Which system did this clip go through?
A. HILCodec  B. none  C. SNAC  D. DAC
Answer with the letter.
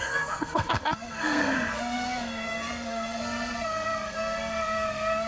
C